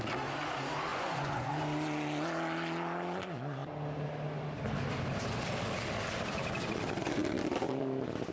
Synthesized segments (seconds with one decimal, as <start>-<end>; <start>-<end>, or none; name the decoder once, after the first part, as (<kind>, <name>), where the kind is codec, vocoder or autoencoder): 0.9-1.5 (vocoder, Vocos)